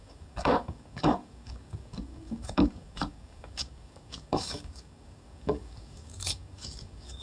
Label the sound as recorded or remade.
remade